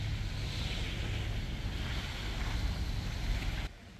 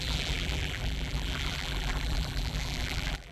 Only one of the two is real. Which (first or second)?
first